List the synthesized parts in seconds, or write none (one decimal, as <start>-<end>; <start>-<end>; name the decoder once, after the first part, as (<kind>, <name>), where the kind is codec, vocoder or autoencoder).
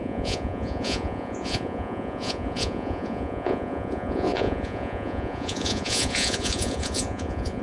0.0-7.6 (vocoder, Vocos)